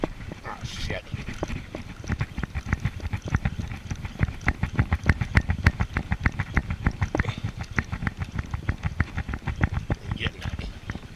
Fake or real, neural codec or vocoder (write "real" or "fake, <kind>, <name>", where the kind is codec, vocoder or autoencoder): real